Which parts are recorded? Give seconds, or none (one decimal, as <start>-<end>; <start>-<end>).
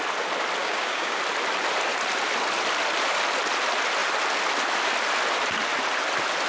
0.0-0.6; 1.2-6.5